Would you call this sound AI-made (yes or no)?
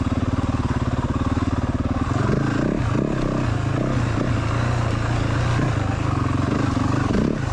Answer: no